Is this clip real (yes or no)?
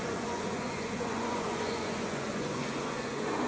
no